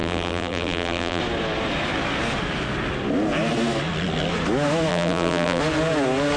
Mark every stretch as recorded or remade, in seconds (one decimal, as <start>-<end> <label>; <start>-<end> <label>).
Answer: 0.0-1.2 remade; 1.2-4.9 recorded; 4.9-5.6 remade; 5.6-6.4 recorded